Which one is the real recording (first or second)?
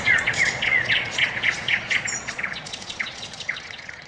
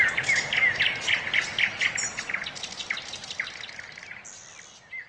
second